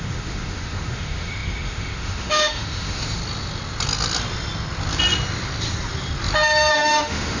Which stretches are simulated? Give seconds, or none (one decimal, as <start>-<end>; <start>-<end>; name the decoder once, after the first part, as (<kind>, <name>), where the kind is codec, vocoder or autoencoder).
0.0-3.2 (autoencoder, DAC-VAE); 6.7-7.4

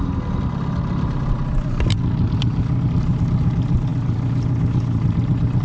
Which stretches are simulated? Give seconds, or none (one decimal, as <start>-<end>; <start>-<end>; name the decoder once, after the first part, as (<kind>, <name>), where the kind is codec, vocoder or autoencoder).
none

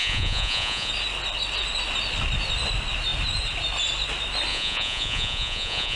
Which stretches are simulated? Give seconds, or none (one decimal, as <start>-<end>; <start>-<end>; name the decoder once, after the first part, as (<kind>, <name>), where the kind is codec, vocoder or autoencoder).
0.0-0.9 (vocoder, Vocos); 4.5-6.0

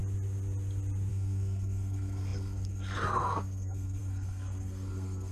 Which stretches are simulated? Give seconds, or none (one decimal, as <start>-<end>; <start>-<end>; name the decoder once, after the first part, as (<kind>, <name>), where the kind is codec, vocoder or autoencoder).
1.1-5.3 (codec, SNAC)

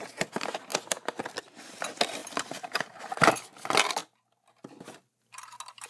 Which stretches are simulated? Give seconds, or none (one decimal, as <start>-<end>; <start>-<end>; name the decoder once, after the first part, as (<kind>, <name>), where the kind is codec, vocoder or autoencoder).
2.2-3.0 (vocoder, BigVGAN v2)

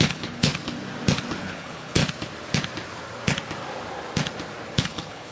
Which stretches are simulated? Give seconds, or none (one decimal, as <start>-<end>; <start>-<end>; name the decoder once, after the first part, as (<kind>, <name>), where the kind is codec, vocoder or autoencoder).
0.0-0.5 (codec, HILCodec); 1.4-2.0; 4.8-5.3

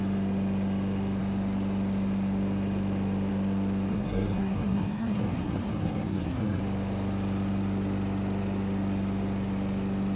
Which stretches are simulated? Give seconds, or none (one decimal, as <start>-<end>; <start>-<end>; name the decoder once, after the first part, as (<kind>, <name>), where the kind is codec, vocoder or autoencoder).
3.9-6.6 (codec, SNAC)

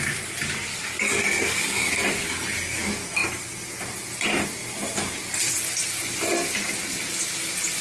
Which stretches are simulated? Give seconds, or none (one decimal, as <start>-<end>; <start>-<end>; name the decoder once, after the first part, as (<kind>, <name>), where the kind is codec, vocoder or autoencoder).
0.7-2.3 (codec, DAC)